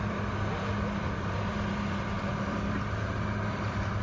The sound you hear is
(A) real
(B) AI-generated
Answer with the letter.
B